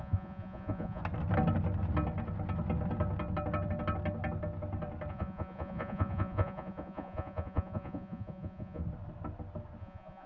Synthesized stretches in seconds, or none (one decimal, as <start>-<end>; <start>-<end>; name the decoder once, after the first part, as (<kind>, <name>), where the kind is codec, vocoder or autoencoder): 0.0-1.0 (vocoder, Vocos); 5.1-8.8; 9.8-10.3